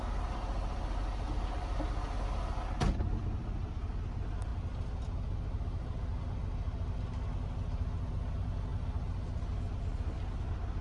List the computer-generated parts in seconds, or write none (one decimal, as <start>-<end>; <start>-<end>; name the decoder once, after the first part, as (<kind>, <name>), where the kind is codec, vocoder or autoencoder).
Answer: none